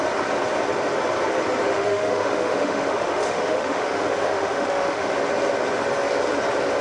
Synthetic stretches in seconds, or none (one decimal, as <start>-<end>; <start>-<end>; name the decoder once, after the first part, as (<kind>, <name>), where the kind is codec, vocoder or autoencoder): 1.7-5.1 (autoencoder, DAC-VAE)